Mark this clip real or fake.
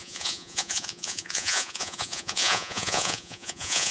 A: fake